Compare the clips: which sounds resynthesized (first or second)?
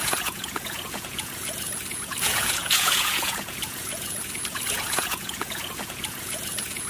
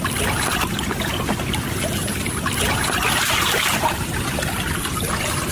first